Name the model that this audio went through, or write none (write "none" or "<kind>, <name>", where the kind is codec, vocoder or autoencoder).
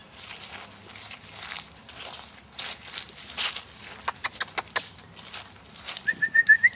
none